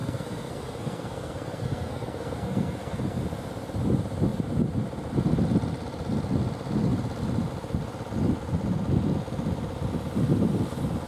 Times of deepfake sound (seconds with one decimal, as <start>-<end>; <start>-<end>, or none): 0.0-3.2